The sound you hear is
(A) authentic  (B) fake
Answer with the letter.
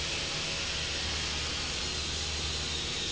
A